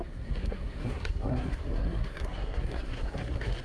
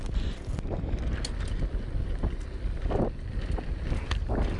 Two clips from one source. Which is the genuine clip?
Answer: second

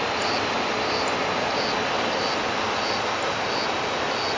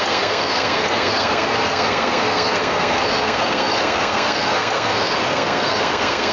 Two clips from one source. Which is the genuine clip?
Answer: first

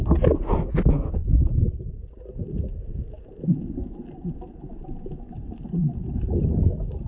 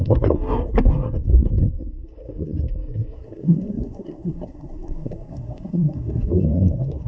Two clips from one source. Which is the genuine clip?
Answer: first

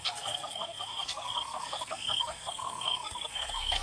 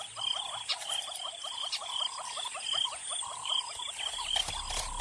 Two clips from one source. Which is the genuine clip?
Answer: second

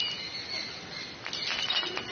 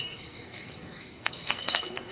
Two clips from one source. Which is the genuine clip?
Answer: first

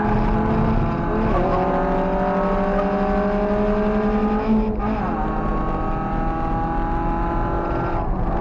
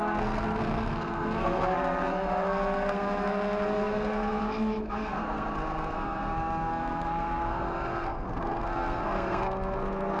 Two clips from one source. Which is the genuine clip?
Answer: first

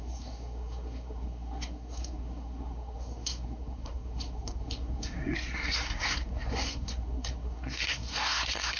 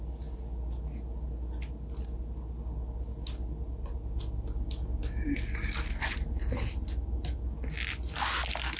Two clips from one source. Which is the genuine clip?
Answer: second